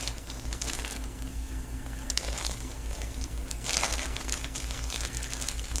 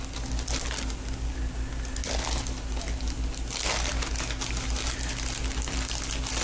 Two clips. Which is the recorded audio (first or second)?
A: second